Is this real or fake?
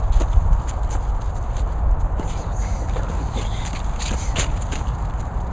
real